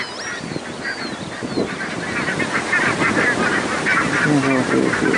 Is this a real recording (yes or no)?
yes